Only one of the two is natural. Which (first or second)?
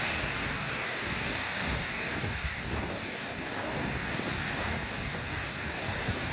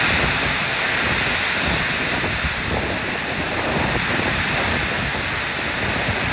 second